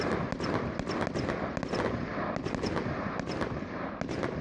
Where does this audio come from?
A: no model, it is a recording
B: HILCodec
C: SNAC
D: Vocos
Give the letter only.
A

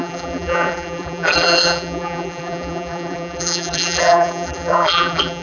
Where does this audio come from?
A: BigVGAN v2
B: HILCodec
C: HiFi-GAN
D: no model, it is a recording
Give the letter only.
A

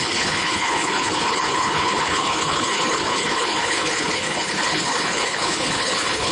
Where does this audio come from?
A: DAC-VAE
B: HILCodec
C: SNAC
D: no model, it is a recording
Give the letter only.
B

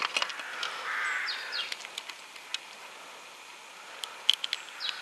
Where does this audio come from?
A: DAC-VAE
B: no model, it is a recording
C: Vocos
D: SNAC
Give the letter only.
B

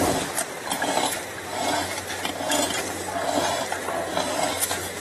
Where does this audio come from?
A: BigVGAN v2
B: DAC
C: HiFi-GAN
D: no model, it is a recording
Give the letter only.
D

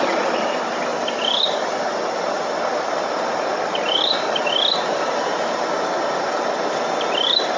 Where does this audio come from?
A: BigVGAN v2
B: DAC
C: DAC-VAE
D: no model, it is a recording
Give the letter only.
A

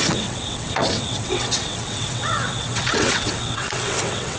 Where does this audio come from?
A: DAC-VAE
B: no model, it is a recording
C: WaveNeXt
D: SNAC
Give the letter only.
C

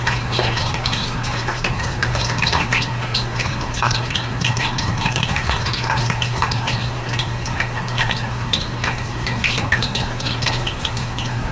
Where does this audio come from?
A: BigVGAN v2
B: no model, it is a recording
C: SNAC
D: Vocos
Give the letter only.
C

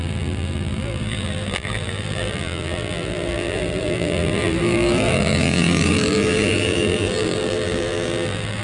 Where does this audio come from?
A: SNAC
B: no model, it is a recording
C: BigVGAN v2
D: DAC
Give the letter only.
C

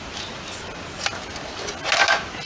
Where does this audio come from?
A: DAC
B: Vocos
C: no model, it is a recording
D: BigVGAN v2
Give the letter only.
C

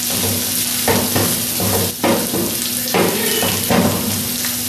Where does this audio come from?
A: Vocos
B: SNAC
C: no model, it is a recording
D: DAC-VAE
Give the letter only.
C